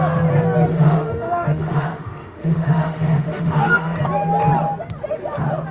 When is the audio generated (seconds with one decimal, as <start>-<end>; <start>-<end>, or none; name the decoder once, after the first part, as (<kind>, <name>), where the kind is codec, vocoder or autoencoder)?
0.7-4.0 (autoencoder, DAC-VAE)